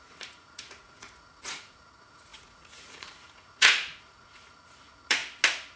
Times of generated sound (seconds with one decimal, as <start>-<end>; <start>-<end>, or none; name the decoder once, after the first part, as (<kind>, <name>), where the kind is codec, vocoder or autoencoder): 0.0-5.2 (vocoder, Vocos)